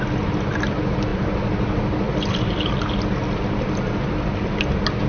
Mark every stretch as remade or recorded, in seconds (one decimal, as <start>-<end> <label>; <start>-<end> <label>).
0.0-5.1 recorded